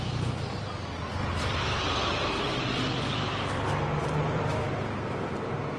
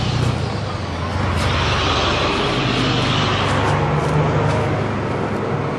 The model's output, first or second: first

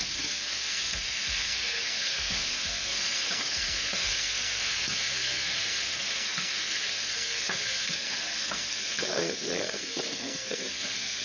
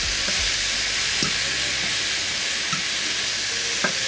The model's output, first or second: first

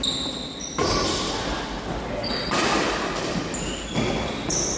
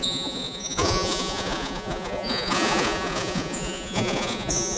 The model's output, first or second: second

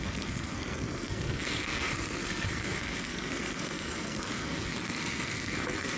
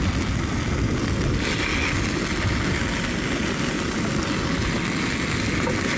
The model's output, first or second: first